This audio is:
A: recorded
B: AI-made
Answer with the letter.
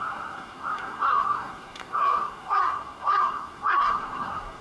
B